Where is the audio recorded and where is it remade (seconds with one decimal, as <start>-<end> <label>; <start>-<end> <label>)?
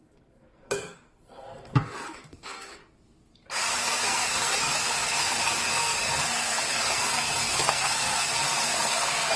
0.0-2.8 remade; 2.8-3.8 recorded; 3.8-9.4 remade